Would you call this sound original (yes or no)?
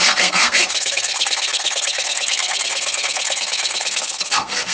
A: no